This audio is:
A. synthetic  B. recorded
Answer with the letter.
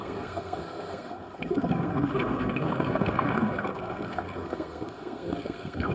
A